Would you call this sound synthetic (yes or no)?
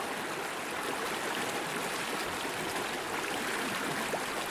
no